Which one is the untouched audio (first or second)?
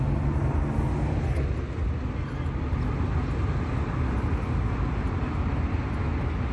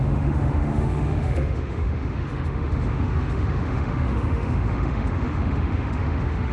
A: first